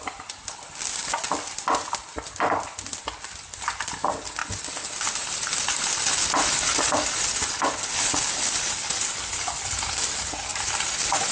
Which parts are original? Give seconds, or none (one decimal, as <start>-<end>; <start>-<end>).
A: 0.0-11.3